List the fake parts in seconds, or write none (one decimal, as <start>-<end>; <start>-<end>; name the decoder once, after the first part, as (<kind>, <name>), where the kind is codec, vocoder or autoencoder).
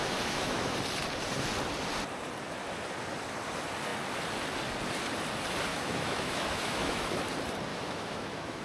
0.0-0.7 (autoencoder, DAC-VAE); 5.7-7.1; 7.7-8.6